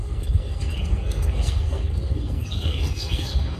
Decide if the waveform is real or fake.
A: fake